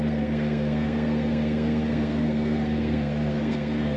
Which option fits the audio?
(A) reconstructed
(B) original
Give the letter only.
A